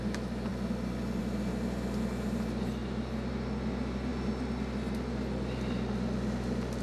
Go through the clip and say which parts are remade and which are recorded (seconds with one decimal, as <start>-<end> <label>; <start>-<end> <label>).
0.0-6.8 recorded